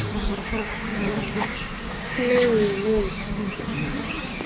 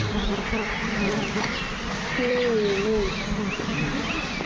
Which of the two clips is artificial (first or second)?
first